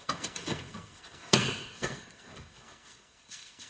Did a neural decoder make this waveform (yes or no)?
yes